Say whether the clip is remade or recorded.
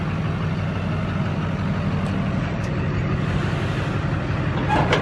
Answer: recorded